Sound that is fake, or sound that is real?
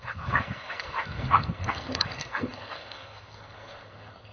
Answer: fake